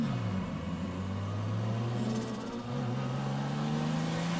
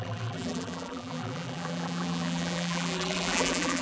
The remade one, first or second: second